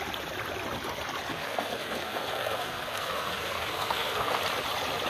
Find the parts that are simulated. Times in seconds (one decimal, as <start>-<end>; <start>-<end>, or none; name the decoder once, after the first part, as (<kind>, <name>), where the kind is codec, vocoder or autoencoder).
1.3-4.4 (codec, SNAC)